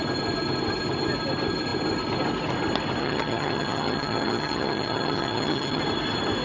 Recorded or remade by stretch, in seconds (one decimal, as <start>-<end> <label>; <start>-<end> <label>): 0.0-3.0 recorded; 3.0-5.8 remade; 5.8-6.4 recorded